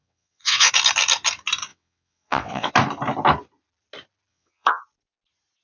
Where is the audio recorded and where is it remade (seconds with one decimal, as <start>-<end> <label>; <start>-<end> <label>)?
0.0-0.7 remade; 0.7-1.7 recorded; 1.7-2.7 remade; 2.7-4.3 recorded; 4.3-4.8 remade; 4.8-5.6 recorded